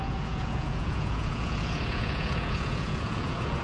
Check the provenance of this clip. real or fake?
fake